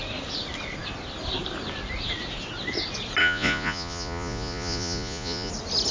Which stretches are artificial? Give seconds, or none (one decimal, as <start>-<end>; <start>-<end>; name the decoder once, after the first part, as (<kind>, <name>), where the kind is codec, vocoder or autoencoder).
3.2-5.5 (vocoder, Vocos)